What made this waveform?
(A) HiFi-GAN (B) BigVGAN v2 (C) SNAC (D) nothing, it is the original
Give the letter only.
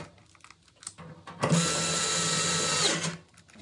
D